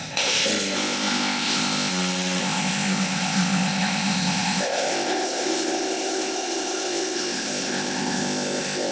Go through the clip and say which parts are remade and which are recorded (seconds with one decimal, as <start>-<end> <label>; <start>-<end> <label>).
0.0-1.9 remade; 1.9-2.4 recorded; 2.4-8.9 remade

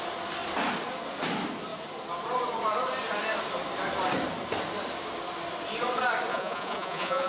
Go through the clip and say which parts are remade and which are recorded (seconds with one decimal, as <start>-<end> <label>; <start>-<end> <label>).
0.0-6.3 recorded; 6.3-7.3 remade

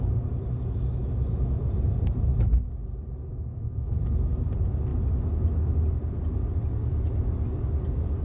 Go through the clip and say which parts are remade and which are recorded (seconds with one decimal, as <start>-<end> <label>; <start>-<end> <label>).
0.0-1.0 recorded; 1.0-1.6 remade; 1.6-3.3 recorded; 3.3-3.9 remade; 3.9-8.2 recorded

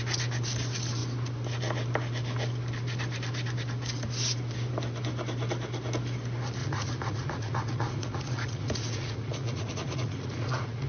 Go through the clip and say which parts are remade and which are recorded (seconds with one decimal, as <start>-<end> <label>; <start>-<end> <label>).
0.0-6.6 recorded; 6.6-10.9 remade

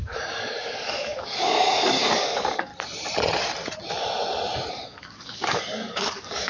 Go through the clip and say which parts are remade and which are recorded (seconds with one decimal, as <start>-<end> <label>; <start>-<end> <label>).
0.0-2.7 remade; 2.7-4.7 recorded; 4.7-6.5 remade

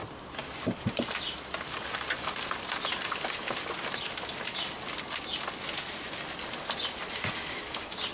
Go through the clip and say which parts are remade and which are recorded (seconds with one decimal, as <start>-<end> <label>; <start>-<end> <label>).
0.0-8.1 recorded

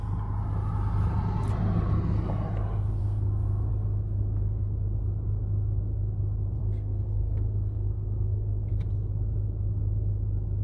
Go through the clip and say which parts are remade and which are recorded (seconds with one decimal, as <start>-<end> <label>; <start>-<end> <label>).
0.0-3.0 recorded; 3.0-3.7 remade; 3.7-6.6 recorded; 6.6-8.7 remade; 8.7-10.6 recorded